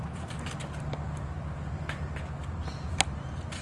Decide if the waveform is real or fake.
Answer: real